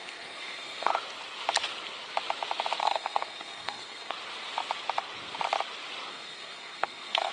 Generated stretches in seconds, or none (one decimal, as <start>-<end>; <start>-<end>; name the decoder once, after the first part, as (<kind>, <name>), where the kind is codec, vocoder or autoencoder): 0.0-0.9 (codec, SNAC); 2.8-4.1; 6.1-7.3